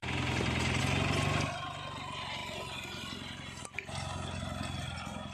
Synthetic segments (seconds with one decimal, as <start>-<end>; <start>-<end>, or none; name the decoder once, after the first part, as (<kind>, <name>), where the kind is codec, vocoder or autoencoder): 0.0-0.8 (vocoder, BigVGAN v2); 2.4-3.6